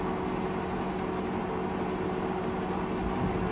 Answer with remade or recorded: recorded